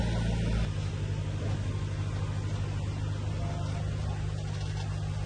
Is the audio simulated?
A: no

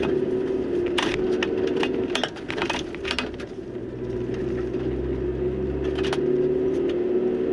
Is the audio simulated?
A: no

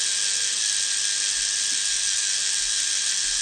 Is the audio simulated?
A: no